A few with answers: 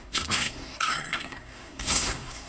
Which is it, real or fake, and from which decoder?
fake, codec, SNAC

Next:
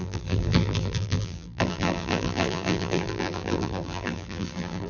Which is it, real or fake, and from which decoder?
fake, vocoder, BigVGAN v2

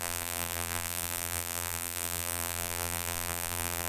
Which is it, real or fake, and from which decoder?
fake, vocoder, BigVGAN v2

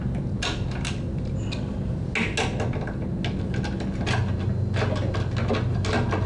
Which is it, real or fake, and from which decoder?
real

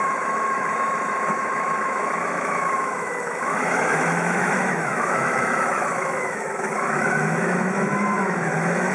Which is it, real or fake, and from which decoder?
fake, autoencoder, DAC-VAE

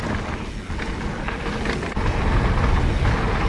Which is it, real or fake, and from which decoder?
real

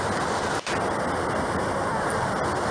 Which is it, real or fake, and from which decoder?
real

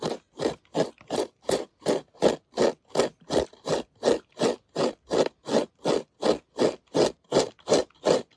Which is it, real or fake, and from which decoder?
real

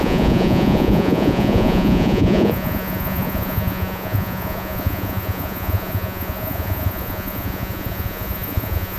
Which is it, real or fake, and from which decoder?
fake, vocoder, Vocos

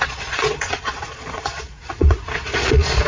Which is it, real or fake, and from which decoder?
fake, vocoder, Vocos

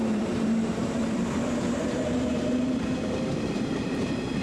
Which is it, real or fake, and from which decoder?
fake, vocoder, BigVGAN v2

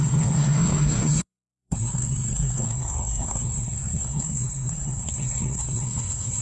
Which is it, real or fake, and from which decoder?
fake, codec, SNAC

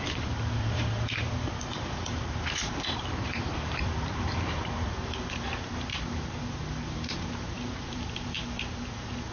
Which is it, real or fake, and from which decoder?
fake, vocoder, BigVGAN v2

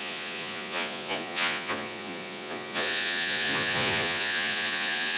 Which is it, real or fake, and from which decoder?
fake, vocoder, Vocos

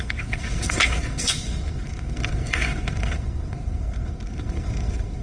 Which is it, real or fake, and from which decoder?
fake, codec, SNAC